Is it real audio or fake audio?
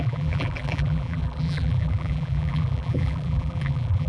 fake